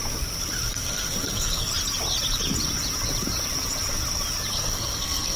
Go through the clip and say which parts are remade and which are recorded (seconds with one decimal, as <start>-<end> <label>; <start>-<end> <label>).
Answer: 0.0-0.7 recorded; 0.7-1.7 remade; 1.7-4.5 recorded; 4.5-5.4 remade